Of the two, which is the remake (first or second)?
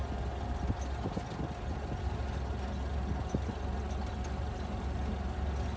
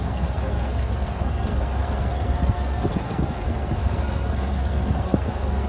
second